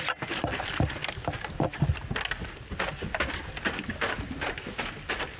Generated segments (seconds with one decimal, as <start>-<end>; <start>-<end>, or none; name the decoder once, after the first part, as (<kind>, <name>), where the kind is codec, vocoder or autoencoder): none